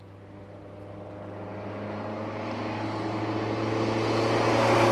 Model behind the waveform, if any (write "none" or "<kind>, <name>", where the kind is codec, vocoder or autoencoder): none